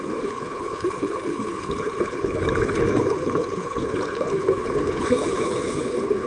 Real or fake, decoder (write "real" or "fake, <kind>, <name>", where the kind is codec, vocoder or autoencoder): fake, codec, HILCodec